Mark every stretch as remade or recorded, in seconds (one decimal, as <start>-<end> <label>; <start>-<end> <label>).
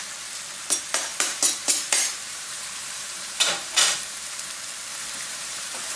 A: 0.0-1.1 recorded; 1.1-4.5 remade; 4.5-4.9 recorded; 4.9-6.0 remade